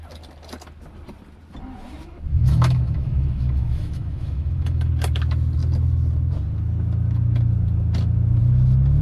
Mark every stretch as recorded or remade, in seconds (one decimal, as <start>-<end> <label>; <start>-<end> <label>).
0.0-2.3 recorded; 2.3-4.9 remade; 4.9-9.0 recorded